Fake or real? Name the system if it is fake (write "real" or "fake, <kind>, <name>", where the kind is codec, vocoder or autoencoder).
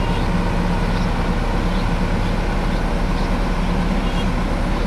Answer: real